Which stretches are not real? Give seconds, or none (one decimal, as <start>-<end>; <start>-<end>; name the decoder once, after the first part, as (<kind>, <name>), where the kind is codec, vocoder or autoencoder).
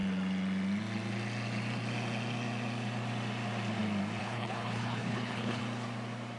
4.2-5.6 (codec, HILCodec)